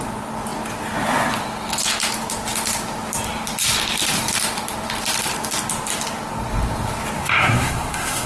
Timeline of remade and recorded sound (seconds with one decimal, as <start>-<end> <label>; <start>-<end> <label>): 0.0-7.2 recorded; 7.2-8.3 remade